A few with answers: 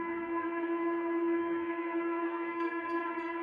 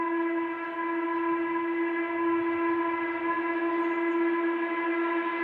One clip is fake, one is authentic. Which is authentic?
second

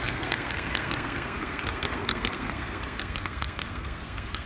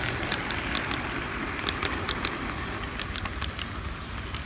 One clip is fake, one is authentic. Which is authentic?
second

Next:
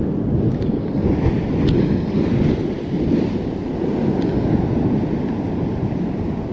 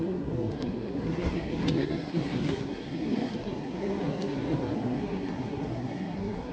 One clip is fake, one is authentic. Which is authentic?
first